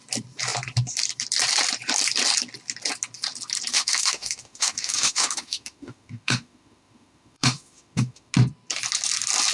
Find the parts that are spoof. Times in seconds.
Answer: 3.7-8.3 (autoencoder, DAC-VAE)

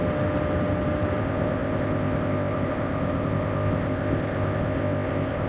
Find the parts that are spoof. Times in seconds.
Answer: 1.2-5.5 (codec, ZipCodec)

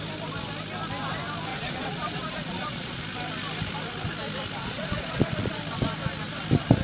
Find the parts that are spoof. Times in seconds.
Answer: 1.5-3.0 (vocoder, Vocos); 4.6-5.6